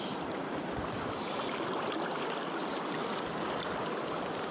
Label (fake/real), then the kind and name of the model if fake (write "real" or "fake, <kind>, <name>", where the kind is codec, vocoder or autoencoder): real